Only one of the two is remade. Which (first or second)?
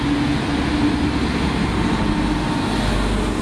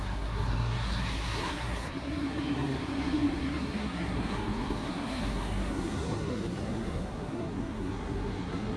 second